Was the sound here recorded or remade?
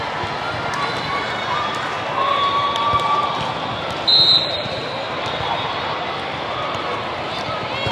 recorded